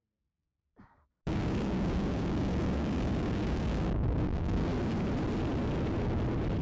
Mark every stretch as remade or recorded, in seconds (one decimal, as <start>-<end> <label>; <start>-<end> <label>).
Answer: 0.0-4.7 remade; 4.7-6.6 recorded